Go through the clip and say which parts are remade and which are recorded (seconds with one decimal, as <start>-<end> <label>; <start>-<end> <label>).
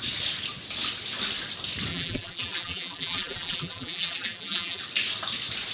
0.0-1.9 recorded; 1.9-4.8 remade; 4.8-5.7 recorded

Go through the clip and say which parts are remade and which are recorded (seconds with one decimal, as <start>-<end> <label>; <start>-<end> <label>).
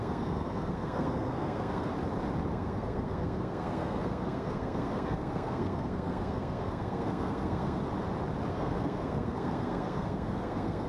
0.0-1.9 remade; 1.9-2.5 recorded; 2.5-7.8 remade; 7.8-8.5 recorded; 8.5-10.9 remade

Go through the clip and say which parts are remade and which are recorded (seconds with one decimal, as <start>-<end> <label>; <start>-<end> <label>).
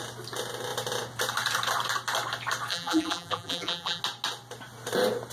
0.0-2.7 recorded; 2.7-4.0 remade; 4.0-5.3 recorded